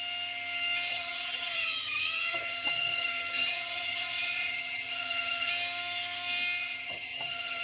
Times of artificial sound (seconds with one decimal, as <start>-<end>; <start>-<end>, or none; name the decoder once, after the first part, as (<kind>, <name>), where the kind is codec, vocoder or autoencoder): 0.9-5.5 (vocoder, HiFi-GAN); 6.6-7.6